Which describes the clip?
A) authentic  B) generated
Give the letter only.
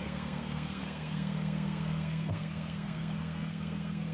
B